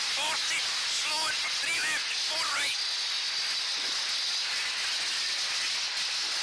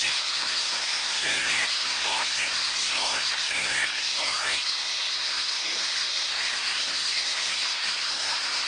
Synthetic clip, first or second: second